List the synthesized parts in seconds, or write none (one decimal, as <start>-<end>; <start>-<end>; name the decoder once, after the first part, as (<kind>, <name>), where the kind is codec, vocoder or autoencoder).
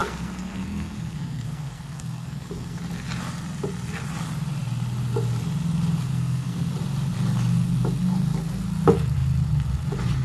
0.0-2.8 (codec, SNAC); 6.1-6.7